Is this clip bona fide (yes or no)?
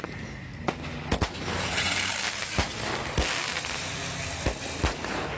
yes